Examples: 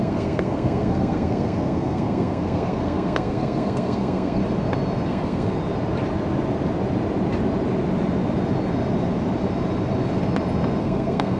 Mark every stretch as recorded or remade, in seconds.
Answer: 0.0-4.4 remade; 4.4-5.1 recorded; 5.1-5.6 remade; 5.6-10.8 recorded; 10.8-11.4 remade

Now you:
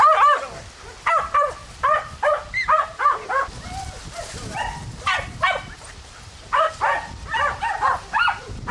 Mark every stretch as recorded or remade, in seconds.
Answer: 0.0-8.7 recorded

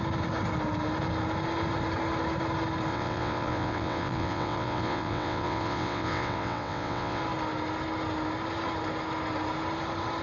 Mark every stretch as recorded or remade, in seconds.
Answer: 0.0-2.9 recorded; 2.9-7.2 remade; 7.2-10.2 recorded

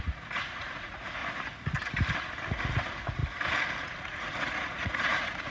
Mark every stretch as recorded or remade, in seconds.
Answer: 0.0-1.2 remade; 1.2-2.5 recorded; 2.5-3.2 remade; 3.2-3.8 recorded; 3.8-5.5 remade

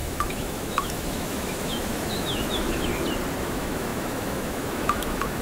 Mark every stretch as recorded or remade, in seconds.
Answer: 0.0-2.9 remade; 2.9-3.4 recorded; 3.4-5.4 remade

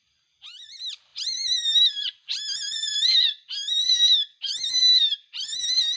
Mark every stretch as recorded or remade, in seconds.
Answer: 0.0-6.0 recorded

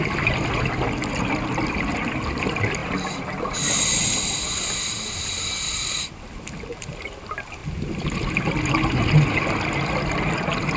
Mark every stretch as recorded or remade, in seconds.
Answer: 0.0-10.8 recorded

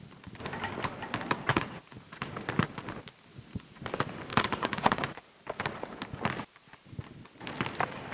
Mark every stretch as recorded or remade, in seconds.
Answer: 0.0-1.5 recorded; 1.5-2.2 remade; 2.2-3.3 recorded; 3.3-3.8 remade; 3.8-4.3 recorded; 4.3-5.3 remade; 5.3-8.1 recorded